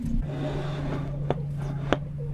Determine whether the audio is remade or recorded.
recorded